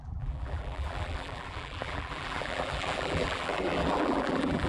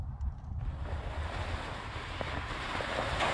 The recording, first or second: second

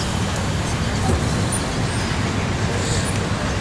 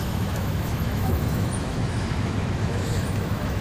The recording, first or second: first